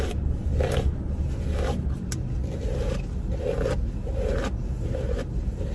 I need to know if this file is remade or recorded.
recorded